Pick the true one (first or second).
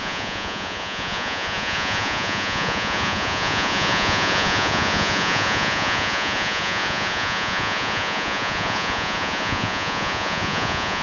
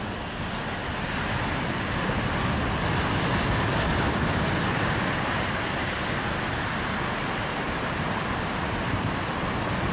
second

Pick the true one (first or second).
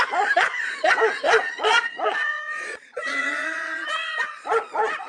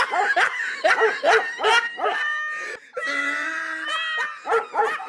second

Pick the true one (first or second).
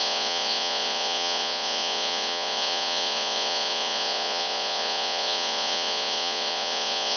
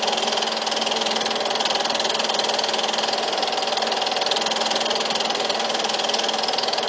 second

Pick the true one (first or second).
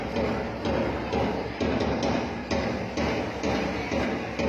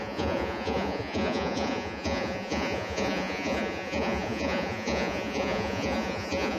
first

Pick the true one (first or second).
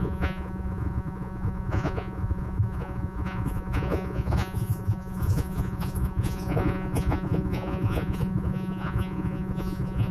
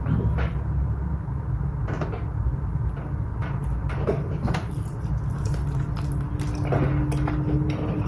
second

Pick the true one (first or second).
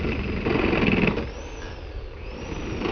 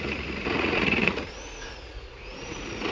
first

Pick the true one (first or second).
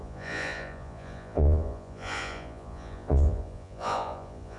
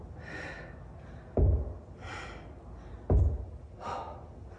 second